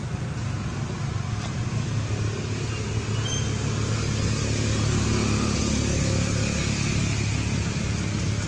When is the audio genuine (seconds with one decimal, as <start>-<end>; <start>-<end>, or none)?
0.0-8.5